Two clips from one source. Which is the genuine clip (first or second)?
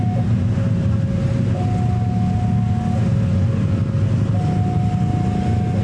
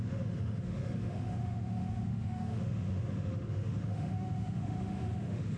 first